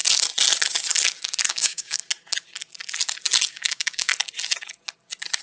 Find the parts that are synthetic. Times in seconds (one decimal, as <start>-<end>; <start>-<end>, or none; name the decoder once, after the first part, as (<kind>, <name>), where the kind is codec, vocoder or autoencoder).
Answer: 1.5-2.0 (codec, DAC); 3.5-4.1